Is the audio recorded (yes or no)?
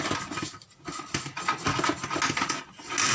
yes